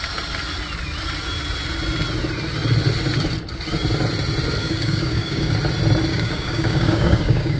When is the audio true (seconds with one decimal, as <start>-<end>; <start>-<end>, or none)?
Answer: 0.0-4.6; 5.5-6.1